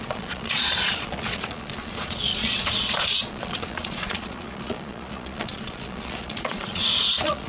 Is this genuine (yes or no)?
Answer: no